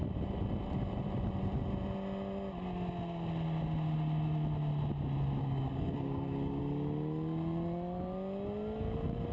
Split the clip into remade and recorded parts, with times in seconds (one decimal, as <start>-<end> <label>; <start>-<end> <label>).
0.0-5.4 recorded; 5.4-6.6 remade; 6.6-9.3 recorded